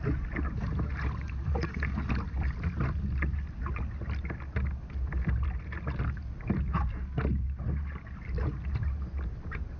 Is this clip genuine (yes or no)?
yes